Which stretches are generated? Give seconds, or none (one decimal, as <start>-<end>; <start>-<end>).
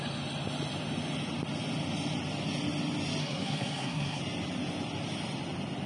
3.2-4.2